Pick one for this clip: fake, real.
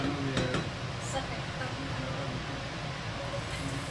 real